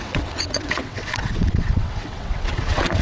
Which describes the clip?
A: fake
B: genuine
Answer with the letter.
A